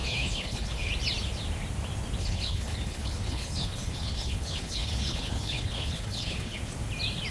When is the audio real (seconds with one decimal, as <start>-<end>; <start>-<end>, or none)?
0.9-2.2; 6.6-7.3